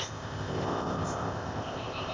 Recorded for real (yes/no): no